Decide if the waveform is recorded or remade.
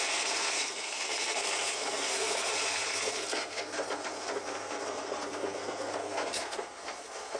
remade